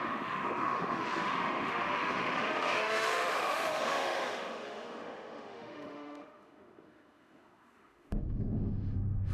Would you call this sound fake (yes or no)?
yes